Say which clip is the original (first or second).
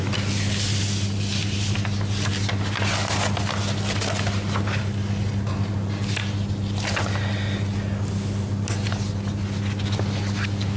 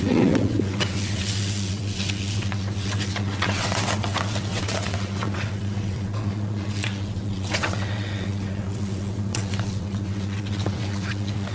first